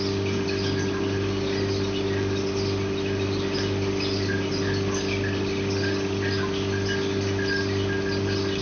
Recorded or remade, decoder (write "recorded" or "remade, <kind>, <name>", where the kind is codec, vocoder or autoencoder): recorded